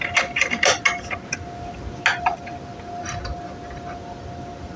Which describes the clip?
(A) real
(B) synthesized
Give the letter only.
A